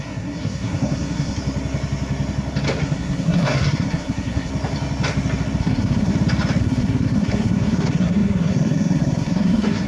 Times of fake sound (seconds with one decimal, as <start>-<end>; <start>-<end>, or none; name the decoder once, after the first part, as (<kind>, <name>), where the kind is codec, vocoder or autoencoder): 0.0-1.4 (codec, SNAC); 2.8-4.5; 5.6-6.1; 6.6-9.9